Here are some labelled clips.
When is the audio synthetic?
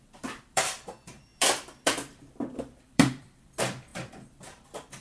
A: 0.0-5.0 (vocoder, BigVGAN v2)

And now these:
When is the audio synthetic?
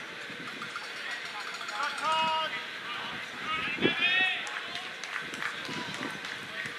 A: none